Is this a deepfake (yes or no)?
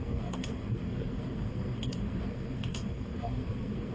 yes